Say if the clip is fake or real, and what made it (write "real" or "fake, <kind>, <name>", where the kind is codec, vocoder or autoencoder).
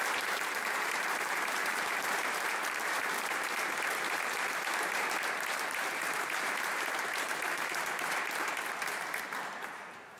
fake, vocoder, BigVGAN v2